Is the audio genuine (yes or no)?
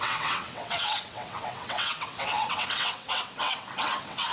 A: no